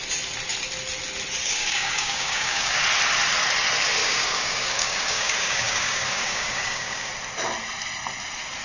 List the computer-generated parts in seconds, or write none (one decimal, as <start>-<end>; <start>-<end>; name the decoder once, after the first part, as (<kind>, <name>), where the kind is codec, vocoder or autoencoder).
1.4-2.8 (codec, DAC); 4.0-7.1